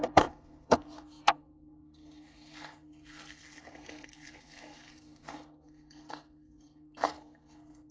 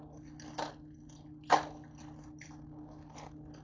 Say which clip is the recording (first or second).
second